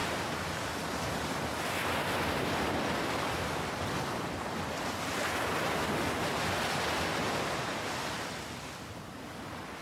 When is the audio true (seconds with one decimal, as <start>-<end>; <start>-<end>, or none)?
4.9-9.8